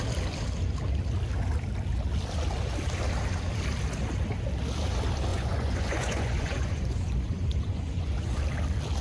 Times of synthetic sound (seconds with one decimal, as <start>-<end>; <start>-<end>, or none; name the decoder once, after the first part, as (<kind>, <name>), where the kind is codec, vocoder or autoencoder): 5.3-8.4 (vocoder, Vocos)